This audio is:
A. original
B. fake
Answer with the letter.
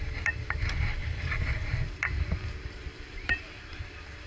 B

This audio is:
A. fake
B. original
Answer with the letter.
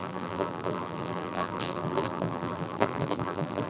A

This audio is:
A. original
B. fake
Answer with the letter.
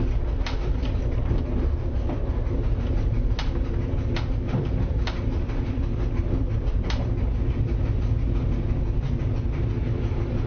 A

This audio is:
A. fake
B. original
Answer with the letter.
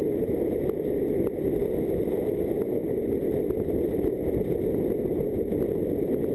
A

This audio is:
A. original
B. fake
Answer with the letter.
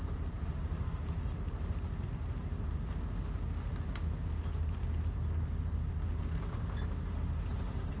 A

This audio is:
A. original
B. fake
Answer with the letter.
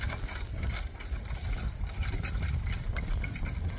A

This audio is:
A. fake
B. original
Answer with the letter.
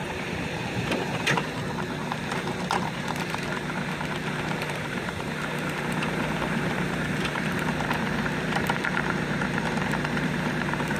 A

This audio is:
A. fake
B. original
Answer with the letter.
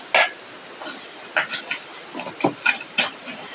B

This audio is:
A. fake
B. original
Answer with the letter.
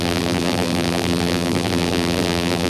A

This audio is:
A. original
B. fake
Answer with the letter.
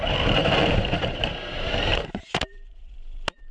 B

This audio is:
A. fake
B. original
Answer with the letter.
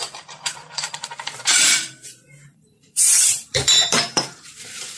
A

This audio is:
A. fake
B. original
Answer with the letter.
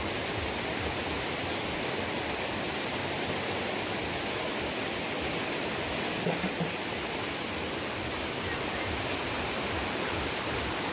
A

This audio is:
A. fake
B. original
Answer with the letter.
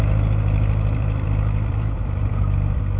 A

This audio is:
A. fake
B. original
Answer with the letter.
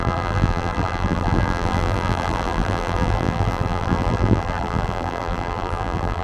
A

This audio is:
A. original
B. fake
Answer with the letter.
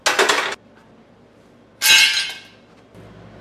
A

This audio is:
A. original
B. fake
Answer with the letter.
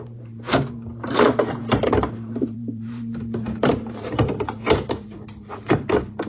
B